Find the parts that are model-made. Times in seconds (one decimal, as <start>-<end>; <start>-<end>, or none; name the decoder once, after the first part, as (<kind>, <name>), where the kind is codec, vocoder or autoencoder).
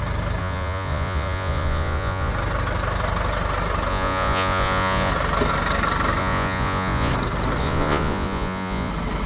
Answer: 0.4-2.3 (vocoder, Vocos); 3.9-5.1; 6.2-7.1; 7.6-8.9